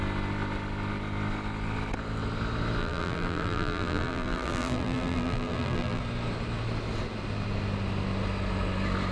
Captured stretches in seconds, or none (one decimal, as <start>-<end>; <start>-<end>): 0.0-2.8; 6.0-9.1